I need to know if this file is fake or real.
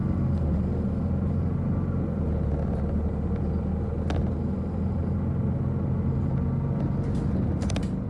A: real